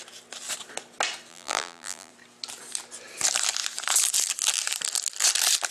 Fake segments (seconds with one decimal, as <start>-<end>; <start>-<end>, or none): 1.3-2.1